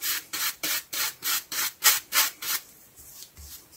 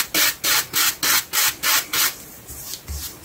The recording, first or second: second